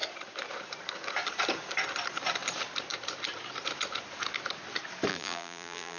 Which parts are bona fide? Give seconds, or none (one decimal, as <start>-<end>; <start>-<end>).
0.0-5.1